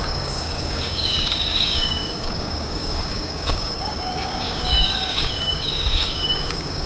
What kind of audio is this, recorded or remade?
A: remade